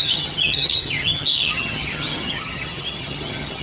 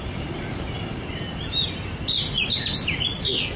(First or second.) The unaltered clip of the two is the second